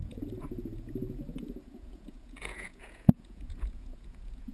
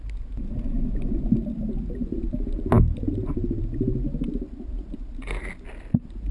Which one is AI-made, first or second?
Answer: first